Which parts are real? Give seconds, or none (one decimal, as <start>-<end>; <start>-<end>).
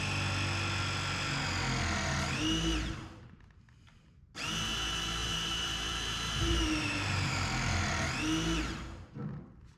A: 0.0-5.2; 7.9-9.8